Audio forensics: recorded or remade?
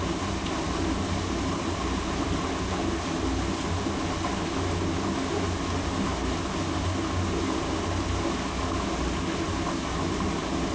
recorded